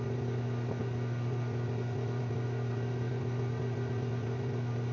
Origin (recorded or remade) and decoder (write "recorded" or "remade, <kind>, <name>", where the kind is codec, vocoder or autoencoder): recorded